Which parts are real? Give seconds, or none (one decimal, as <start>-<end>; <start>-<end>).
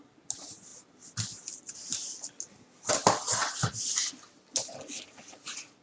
0.0-5.8